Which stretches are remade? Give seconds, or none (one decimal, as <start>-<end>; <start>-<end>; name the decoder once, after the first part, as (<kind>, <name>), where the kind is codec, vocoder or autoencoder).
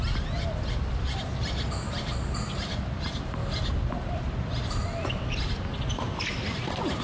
none